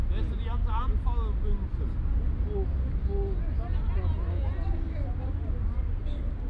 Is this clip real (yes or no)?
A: yes